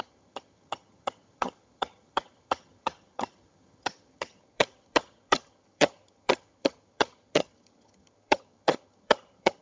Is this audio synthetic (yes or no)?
yes